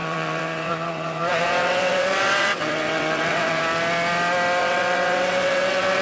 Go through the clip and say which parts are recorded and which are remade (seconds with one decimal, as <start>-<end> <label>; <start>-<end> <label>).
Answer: 0.0-3.6 remade; 3.6-4.6 recorded; 4.6-6.0 remade